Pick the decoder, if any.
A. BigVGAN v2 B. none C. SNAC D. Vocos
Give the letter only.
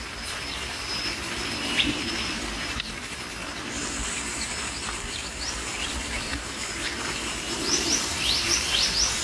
A